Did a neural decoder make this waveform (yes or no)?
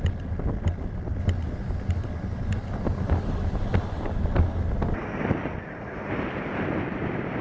no